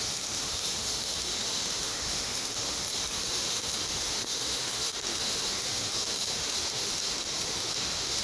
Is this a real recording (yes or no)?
no